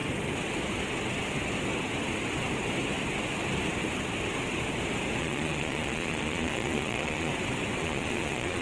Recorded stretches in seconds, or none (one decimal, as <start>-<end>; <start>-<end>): 0.0-5.2; 7.3-7.8